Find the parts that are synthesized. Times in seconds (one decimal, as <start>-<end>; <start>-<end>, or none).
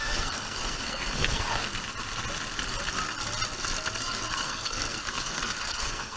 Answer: 0.0-1.7; 4.0-6.2